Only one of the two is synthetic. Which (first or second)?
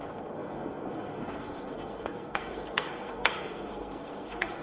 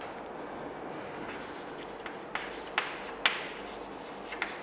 first